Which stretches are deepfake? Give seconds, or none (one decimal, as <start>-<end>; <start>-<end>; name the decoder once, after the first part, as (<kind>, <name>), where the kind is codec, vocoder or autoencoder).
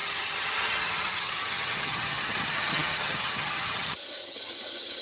0.0-5.0 (vocoder, HiFi-GAN)